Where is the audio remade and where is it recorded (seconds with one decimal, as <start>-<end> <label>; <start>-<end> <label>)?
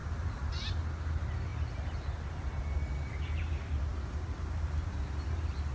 0.0-5.7 recorded